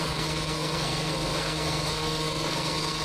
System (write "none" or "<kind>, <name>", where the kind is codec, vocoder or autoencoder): codec, SNAC